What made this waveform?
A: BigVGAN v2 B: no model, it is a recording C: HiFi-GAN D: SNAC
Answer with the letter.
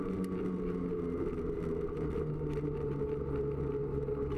B